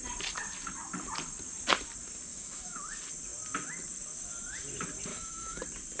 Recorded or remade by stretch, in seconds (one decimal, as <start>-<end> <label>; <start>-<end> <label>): 0.0-2.3 recorded; 2.3-2.8 remade; 2.8-5.1 recorded; 5.1-5.6 remade; 5.6-6.0 recorded